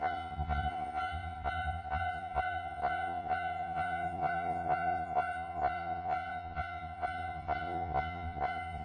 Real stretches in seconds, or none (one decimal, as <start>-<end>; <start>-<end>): none